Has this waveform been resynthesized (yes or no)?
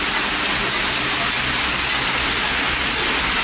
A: no